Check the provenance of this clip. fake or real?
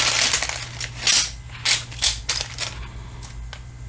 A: real